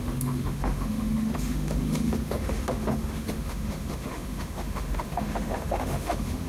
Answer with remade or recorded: remade